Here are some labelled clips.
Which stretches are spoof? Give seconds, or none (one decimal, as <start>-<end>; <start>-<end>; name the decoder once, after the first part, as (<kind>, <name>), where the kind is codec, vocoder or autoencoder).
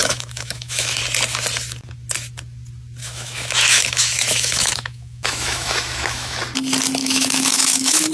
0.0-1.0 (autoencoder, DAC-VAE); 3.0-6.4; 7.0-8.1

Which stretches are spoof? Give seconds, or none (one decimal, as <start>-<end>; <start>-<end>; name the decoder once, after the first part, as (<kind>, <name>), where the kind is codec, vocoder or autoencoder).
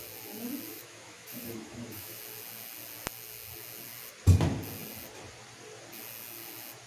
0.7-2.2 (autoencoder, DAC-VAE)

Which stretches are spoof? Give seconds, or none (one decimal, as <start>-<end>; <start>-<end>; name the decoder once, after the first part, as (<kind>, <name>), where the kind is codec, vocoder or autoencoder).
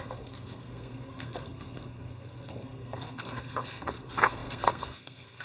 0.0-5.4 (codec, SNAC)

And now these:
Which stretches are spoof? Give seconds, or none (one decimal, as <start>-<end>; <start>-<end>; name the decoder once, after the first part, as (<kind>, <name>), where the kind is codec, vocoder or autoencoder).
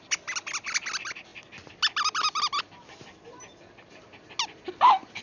none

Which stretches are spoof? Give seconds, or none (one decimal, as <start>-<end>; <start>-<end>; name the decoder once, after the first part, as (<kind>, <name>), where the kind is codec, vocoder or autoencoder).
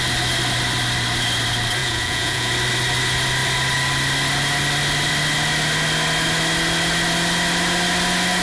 1.8-2.5 (vocoder, Vocos)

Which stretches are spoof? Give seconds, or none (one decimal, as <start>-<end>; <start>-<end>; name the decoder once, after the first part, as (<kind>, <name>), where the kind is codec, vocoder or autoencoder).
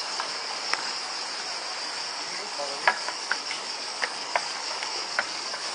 0.0-0.9 (codec, DAC); 2.1-5.7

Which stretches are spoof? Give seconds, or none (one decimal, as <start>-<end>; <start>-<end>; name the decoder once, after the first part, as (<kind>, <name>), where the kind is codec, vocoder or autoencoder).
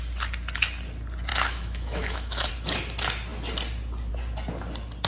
1.3-2.5 (autoencoder, DAC-VAE)